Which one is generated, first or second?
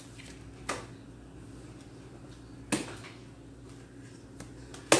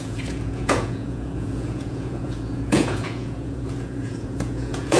second